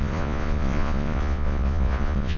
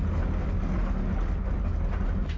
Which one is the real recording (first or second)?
second